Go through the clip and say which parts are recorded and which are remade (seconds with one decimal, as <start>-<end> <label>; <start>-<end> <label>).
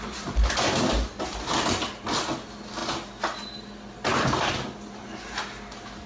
0.0-6.1 recorded